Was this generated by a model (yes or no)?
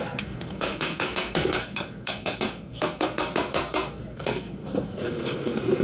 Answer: yes